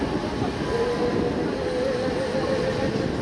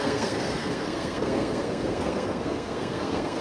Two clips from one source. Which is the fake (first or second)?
second